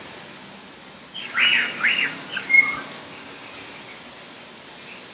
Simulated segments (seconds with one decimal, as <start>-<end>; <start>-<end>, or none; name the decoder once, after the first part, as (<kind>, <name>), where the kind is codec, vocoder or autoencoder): 1.2-2.3 (codec, DAC); 3.0-3.5